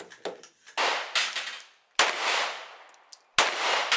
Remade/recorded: recorded